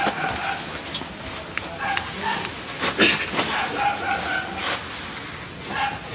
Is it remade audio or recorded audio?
recorded